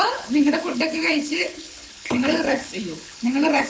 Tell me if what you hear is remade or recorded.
remade